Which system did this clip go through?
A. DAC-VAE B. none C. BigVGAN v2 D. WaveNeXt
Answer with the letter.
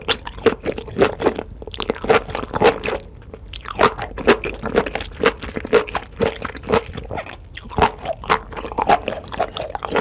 B